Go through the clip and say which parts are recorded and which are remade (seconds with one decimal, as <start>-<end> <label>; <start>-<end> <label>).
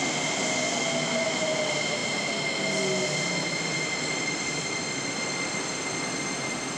0.0-6.8 recorded